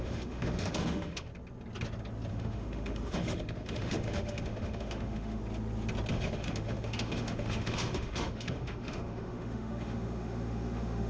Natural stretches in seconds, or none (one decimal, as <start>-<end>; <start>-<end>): 1.3-2.3; 5.4-6.1